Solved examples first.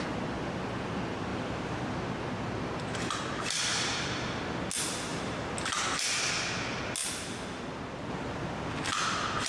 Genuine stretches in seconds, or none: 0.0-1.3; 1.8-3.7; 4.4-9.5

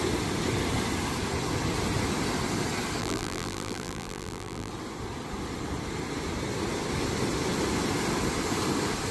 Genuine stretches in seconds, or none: 0.0-3.0; 4.7-9.1

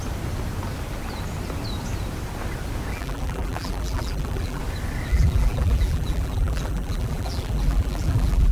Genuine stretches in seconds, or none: 0.0-2.9; 4.6-5.1